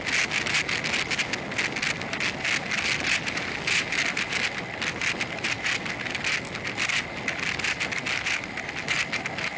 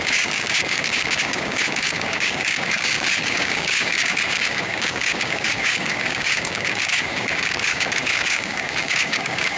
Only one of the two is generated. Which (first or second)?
second